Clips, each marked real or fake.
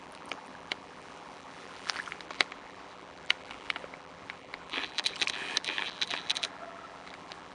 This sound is fake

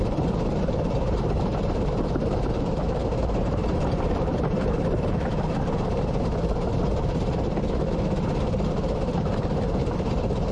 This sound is fake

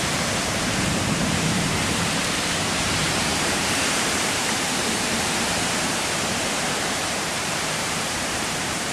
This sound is fake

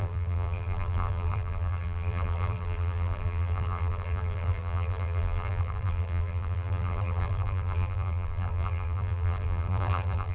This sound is fake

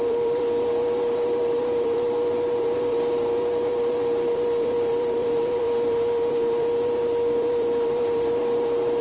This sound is fake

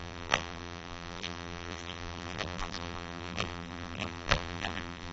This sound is fake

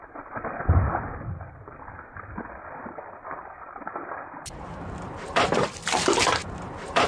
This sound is fake